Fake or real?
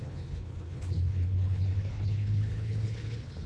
fake